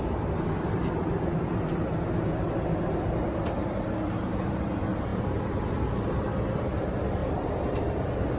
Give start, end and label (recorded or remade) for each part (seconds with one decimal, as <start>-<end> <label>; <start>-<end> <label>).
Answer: 0.0-7.2 recorded; 7.2-7.9 remade; 7.9-8.4 recorded